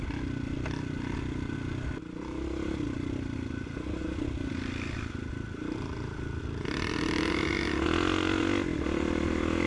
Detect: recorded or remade recorded